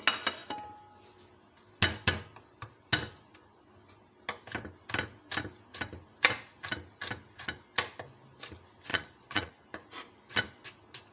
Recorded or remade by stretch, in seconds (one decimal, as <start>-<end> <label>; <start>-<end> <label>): 0.0-8.9 recorded; 8.9-9.5 remade; 9.5-11.1 recorded